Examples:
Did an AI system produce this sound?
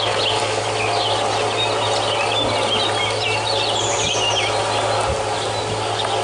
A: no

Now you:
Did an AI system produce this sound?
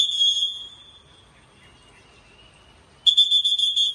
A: no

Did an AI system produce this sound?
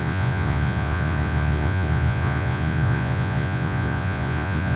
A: yes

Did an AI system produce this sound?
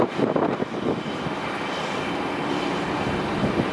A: no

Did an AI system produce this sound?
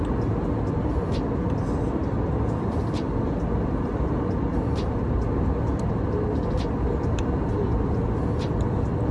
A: no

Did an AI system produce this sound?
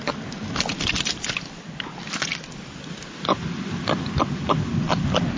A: no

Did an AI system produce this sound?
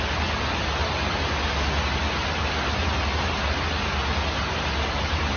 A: no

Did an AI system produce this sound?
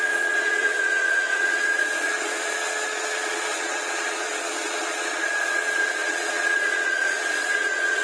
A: yes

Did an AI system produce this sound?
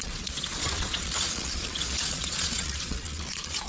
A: yes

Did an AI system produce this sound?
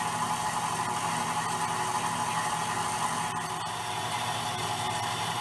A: no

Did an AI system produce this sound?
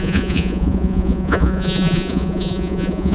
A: yes